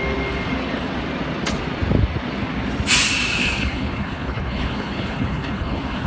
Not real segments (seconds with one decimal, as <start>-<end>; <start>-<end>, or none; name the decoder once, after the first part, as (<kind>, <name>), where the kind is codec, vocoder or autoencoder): 3.4-6.1 (codec, HILCodec)